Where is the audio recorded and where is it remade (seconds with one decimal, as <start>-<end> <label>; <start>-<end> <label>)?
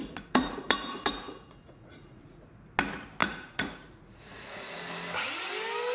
0.0-2.5 remade; 2.5-3.2 recorded; 3.2-4.8 remade; 4.8-5.9 recorded